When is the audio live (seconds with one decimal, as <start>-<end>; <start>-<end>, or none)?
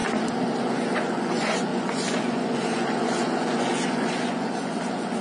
0.0-0.6